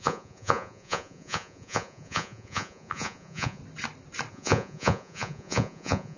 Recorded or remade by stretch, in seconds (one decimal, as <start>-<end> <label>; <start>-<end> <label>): 0.0-3.6 remade; 3.6-4.3 recorded; 4.3-6.2 remade